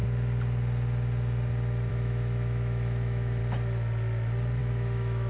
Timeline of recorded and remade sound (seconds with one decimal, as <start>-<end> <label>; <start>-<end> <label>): 0.0-1.9 recorded; 1.9-3.4 remade; 3.4-4.6 recorded; 4.6-5.3 remade